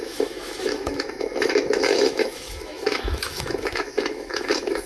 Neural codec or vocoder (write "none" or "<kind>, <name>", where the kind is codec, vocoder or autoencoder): autoencoder, DAC-VAE